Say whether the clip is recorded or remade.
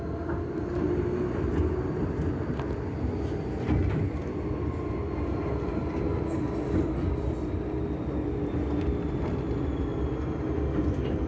recorded